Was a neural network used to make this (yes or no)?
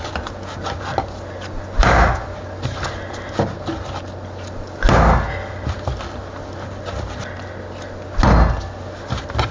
no